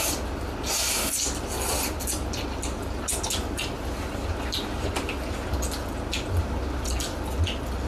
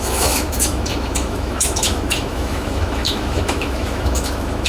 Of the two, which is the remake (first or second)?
second